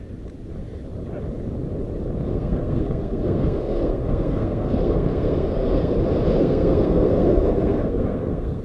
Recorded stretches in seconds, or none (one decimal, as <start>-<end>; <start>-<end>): 0.0-2.3; 5.9-6.4